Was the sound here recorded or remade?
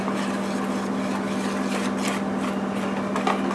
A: recorded